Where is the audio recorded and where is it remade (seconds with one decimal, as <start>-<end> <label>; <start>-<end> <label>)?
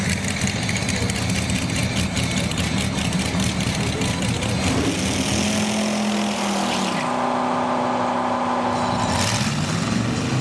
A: 0.0-10.4 recorded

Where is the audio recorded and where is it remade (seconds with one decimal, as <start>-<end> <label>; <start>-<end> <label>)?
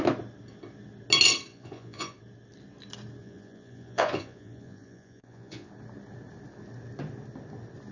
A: 0.0-1.5 recorded; 1.5-2.2 remade; 2.2-3.2 recorded; 3.2-5.7 remade; 5.7-7.9 recorded